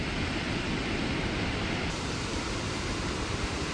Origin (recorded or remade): remade